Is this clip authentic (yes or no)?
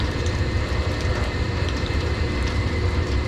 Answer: no